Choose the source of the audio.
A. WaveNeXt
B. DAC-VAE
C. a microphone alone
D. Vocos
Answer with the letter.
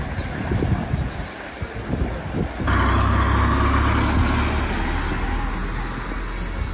C